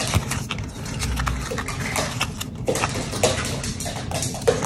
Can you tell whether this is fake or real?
real